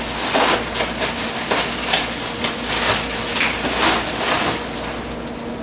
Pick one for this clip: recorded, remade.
recorded